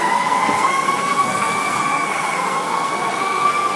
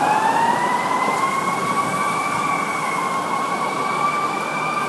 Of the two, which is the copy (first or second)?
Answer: first